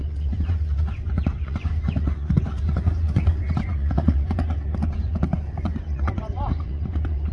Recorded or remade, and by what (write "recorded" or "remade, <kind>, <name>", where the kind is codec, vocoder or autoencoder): remade, vocoder, Vocos